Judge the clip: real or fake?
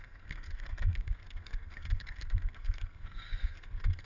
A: fake